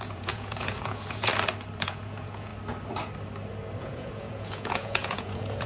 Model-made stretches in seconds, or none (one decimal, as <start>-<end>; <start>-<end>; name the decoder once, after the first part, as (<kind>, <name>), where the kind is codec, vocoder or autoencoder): 0.0-1.3 (vocoder, Vocos); 1.8-2.5; 3.8-5.7